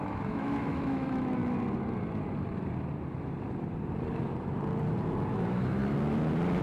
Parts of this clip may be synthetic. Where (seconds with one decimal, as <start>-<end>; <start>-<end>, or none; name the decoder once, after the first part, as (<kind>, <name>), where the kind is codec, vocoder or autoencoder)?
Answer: 0.0-1.4 (autoencoder, DAC-VAE); 5.3-5.8